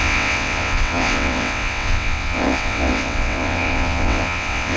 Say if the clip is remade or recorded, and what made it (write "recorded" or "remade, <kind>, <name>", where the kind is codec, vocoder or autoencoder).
remade, vocoder, WaveNeXt